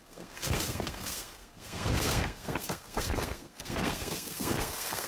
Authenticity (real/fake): fake